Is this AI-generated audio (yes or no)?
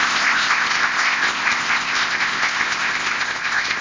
yes